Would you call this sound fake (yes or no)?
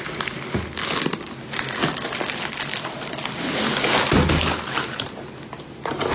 no